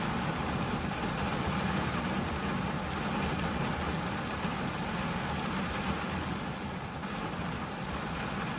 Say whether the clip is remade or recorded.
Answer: recorded